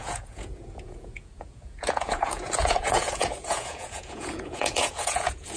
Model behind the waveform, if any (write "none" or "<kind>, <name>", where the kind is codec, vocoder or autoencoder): vocoder, Vocos